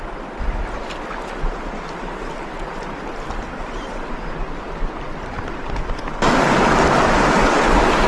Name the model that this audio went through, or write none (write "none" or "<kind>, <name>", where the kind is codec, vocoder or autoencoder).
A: none